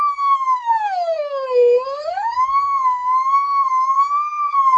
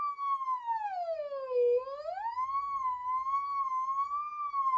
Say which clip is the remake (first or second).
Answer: first